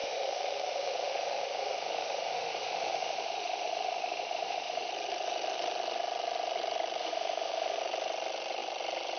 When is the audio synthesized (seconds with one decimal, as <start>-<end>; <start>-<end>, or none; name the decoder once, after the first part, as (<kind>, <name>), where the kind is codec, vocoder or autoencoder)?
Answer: 0.0-4.9 (autoencoder, DAC-VAE); 7.0-7.8